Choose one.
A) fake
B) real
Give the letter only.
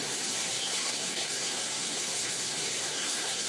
A